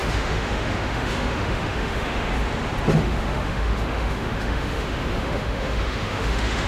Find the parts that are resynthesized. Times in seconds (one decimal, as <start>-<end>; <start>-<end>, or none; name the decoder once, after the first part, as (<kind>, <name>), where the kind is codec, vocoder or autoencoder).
0.0-2.3 (autoencoder, DAC-VAE); 3.0-6.7